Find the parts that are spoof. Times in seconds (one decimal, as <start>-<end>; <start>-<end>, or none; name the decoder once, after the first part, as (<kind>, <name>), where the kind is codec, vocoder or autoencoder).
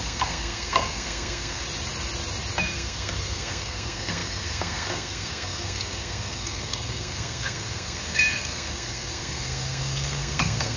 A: 0.0-1.6 (codec, SNAC); 2.6-10.8